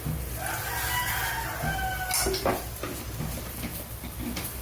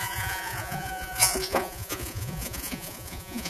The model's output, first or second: second